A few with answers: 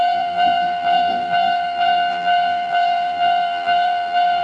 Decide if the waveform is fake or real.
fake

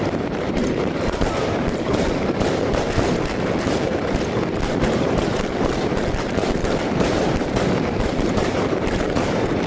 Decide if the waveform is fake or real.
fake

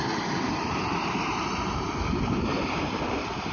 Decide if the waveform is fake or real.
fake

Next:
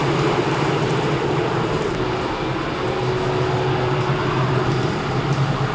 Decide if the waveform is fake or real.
real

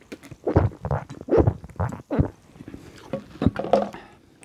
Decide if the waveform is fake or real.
real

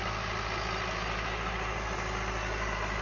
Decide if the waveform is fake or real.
real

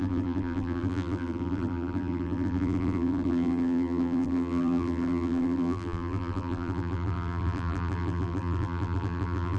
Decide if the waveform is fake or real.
fake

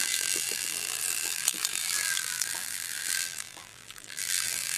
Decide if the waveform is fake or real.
fake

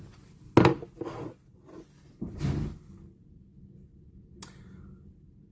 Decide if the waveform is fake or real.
real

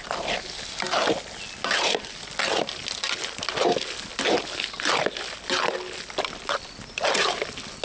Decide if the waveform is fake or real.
real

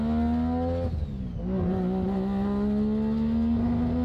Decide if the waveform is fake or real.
real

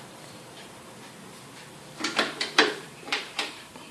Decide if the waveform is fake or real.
fake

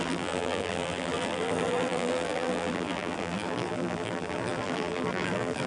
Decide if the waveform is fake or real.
fake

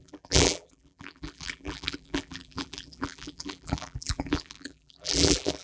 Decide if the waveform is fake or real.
fake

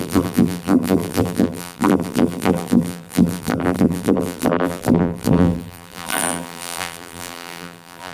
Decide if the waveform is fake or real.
fake